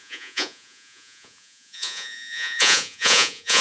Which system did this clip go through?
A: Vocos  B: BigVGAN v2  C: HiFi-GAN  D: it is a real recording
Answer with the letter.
A